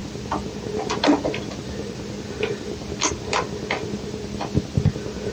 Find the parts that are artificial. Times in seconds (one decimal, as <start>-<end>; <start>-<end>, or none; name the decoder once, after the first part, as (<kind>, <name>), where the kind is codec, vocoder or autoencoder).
none